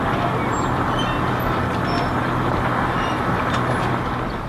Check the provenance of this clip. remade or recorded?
recorded